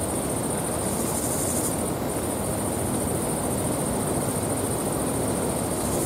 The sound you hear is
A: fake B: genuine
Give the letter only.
B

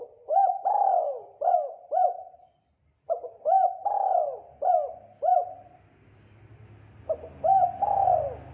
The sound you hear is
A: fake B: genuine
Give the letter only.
B